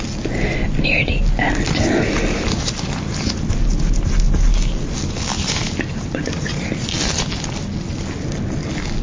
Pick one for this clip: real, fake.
real